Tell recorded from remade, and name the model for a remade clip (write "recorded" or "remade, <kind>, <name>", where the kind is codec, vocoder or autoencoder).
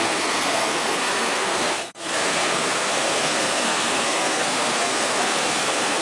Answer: remade, codec, SNAC